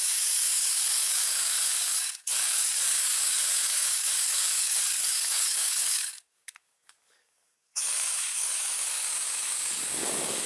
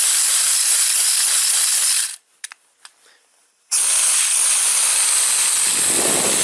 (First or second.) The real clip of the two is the second